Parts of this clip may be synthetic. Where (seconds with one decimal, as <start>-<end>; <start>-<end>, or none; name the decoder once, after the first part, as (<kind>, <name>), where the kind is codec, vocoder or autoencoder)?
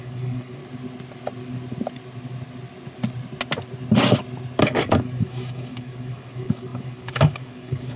0.0-0.6 (codec, DAC); 4.6-8.0